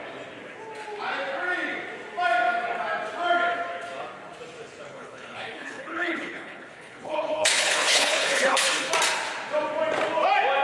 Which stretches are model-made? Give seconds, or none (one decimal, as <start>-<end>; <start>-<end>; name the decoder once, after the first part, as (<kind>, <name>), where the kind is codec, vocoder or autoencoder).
4.9-8.9 (codec, HILCodec)